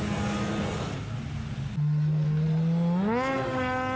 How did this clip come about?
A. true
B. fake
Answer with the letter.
A